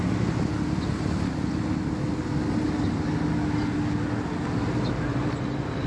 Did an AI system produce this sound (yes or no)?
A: no